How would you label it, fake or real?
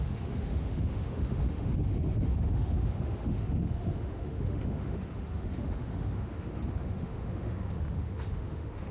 fake